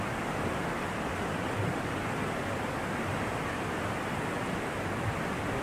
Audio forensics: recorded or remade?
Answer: recorded